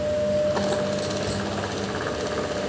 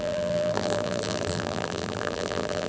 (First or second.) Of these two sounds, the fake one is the second